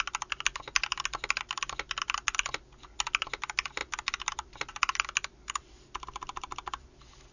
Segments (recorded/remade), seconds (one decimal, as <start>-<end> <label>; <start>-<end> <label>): 0.0-7.3 recorded